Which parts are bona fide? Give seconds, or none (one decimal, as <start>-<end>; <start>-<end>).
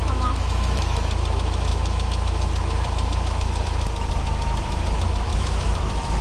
none